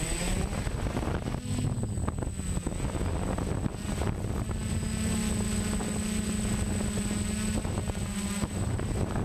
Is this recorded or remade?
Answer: recorded